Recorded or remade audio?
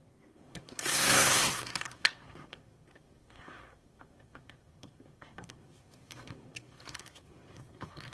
remade